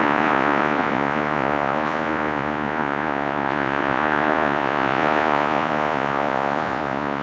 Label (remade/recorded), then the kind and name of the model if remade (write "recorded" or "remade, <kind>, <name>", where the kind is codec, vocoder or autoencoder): remade, vocoder, Vocos